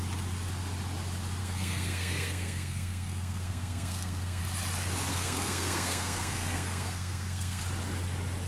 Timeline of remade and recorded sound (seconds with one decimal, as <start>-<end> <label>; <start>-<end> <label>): 0.0-1.4 recorded; 1.4-4.4 remade; 4.4-5.1 recorded; 5.1-7.6 remade; 7.6-8.5 recorded